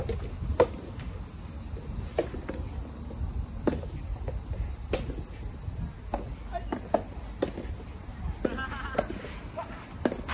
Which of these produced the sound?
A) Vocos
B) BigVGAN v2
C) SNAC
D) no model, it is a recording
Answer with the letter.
D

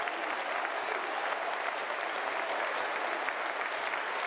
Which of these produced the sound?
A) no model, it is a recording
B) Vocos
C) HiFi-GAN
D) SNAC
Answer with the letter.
A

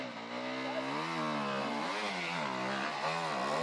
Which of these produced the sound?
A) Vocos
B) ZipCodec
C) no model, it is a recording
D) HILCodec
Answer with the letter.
C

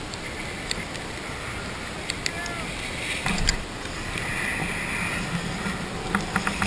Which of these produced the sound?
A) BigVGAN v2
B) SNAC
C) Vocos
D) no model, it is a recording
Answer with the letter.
D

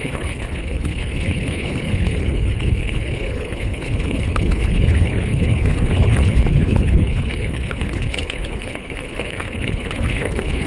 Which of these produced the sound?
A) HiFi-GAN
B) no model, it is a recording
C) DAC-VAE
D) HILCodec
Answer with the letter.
D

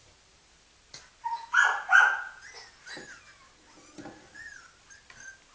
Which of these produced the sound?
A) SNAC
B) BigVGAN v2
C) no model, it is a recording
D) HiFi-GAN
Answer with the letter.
C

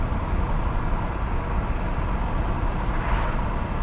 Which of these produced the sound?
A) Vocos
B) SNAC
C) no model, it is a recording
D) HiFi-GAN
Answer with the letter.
C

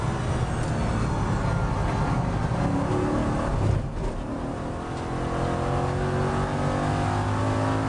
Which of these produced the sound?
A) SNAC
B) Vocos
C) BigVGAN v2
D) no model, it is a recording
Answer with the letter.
D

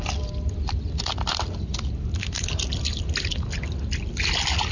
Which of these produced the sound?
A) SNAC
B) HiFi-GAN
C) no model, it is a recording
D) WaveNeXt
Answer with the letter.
C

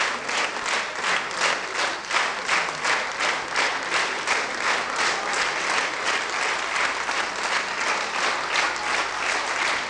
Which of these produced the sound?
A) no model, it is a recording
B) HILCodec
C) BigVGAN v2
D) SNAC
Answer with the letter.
A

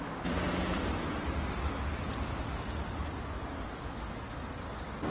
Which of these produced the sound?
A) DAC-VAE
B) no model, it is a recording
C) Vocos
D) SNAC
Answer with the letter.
B